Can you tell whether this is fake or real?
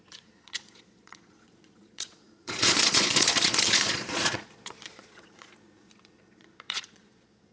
fake